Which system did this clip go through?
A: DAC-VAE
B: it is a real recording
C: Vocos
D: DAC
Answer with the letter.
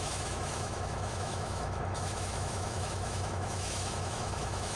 A